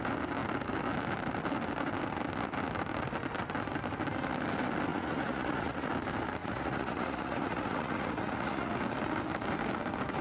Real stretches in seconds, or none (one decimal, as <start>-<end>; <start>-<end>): 0.0-4.9; 5.9-6.4; 8.7-10.2